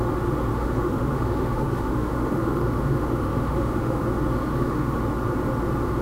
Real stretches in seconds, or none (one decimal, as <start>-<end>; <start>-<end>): 0.0-0.5; 4.0-4.5; 5.0-6.0